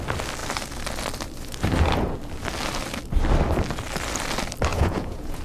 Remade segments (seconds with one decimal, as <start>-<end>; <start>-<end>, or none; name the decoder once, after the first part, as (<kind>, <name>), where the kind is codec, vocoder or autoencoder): 4.7-5.4 (vocoder, Vocos)